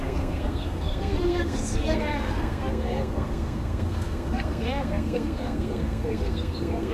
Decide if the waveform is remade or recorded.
remade